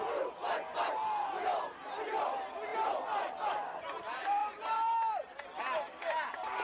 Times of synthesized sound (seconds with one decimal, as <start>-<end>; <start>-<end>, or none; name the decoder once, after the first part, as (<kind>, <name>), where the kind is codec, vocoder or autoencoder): none